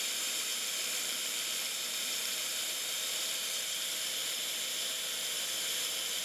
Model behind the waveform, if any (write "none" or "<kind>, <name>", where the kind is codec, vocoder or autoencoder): vocoder, BigVGAN v2